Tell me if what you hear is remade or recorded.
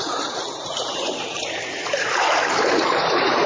remade